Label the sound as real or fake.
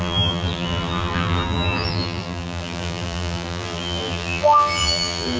fake